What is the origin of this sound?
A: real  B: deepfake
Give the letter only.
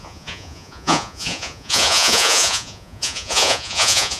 B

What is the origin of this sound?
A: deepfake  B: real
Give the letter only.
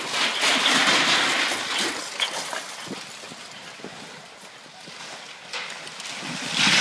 B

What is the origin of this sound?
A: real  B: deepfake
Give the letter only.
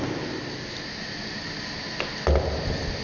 A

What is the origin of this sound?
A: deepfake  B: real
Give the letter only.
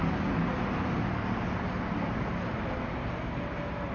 B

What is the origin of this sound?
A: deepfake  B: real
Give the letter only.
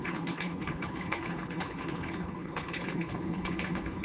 A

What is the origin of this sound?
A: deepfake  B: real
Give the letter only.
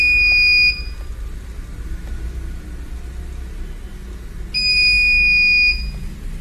B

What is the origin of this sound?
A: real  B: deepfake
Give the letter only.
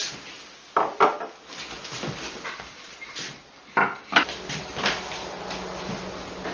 A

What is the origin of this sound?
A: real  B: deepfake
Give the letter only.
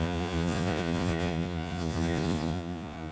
B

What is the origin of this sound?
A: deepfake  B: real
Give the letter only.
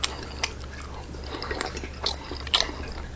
B